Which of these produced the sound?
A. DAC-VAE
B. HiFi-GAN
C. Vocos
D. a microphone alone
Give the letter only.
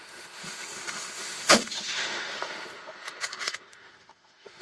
A